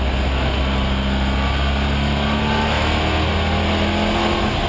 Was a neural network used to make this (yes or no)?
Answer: no